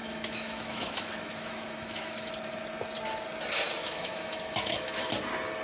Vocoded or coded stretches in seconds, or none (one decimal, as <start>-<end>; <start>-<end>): 0.0-2.3; 3.8-5.1